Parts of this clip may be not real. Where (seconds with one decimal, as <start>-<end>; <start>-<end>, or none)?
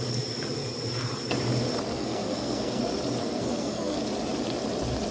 1.9-2.8; 3.2-4.0